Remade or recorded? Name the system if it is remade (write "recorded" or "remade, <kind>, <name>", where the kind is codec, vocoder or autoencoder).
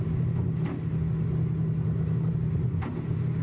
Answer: recorded